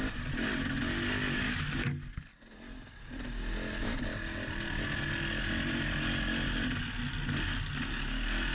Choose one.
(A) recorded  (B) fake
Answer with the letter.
A